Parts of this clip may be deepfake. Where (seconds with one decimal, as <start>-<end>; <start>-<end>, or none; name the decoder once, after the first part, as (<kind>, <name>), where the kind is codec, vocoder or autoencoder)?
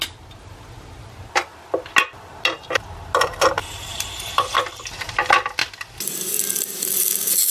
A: 3.6-4.8 (vocoder, BigVGAN v2)